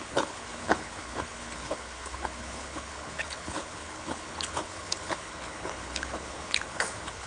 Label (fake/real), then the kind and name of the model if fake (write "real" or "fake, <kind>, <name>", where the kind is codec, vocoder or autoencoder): fake, codec, HILCodec